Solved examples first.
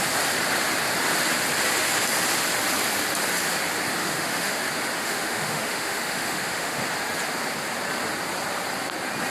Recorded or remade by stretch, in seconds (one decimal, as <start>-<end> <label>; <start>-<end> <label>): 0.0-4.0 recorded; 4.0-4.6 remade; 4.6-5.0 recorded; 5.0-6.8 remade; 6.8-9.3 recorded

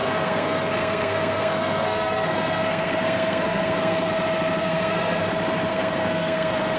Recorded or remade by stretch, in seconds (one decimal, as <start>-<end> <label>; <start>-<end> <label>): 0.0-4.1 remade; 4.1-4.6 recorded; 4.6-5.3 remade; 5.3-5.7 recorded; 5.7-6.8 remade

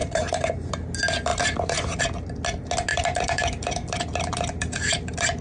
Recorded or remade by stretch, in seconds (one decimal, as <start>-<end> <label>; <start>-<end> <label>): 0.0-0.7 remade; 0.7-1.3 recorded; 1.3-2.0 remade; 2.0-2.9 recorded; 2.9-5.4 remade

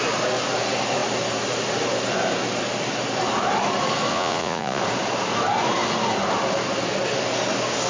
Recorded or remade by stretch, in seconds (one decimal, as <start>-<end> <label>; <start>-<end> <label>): 0.0-4.1 recorded; 4.1-4.8 remade; 4.8-7.9 recorded

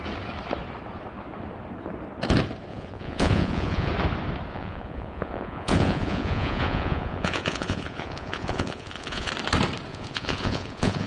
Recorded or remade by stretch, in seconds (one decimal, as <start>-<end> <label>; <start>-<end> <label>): 0.0-2.7 recorded; 2.7-3.9 remade; 3.9-4.5 recorded; 4.5-9.3 remade; 9.3-9.9 recorded; 9.9-11.1 remade